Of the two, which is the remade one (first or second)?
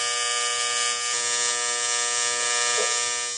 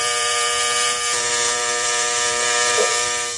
second